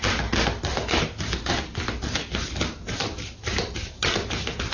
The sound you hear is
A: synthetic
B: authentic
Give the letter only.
B